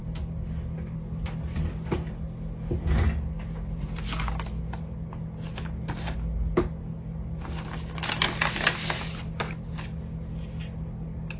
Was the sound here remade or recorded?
recorded